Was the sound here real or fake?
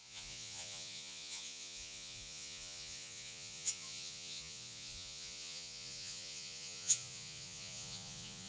fake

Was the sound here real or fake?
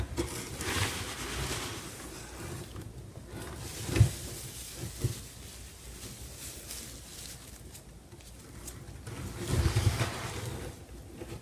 real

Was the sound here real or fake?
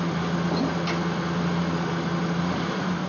real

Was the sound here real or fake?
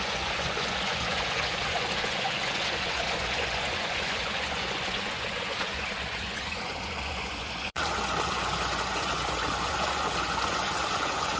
fake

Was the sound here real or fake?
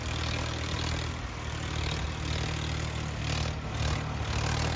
real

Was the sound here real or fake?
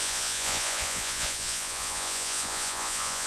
fake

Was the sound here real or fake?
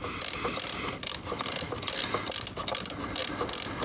real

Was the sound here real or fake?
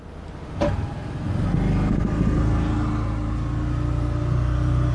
real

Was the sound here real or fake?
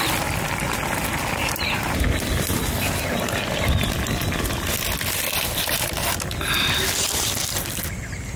real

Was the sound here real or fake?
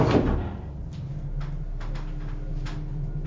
real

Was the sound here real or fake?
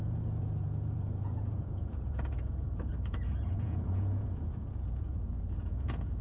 fake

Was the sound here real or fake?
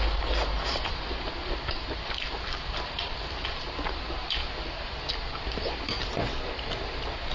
real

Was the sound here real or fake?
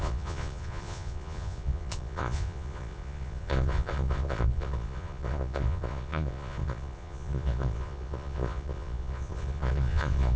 fake